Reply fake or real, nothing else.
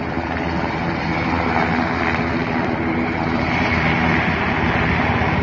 real